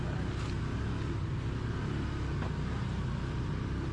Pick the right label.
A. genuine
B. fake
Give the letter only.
A